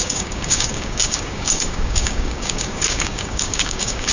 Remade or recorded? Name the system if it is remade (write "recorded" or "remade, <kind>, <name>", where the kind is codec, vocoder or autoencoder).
remade, codec, DAC